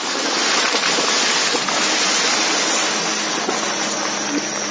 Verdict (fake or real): real